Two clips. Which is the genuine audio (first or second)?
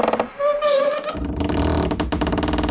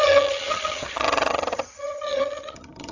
first